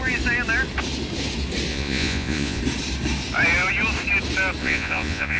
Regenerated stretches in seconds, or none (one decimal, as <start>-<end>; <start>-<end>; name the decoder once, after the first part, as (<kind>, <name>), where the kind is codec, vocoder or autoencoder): 1.7-2.6 (vocoder, Vocos); 4.6-5.4